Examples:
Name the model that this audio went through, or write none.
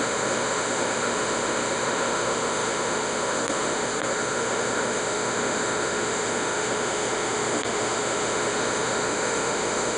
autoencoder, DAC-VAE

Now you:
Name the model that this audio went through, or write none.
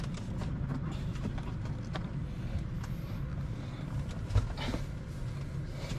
none